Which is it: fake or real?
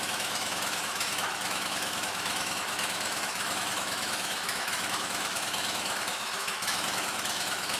fake